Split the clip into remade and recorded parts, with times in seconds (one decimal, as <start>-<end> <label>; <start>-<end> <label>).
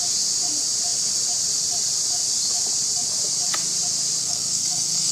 0.0-4.2 recorded; 4.2-5.1 remade